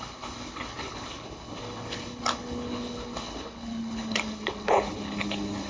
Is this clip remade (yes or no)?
yes